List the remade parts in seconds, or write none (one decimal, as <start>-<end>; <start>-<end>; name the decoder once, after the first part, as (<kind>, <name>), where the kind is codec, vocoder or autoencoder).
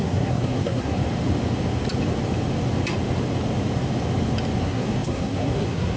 0.0-1.0 (codec, SNAC); 4.6-6.0